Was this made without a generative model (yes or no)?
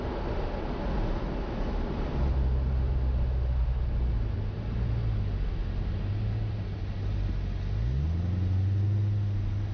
yes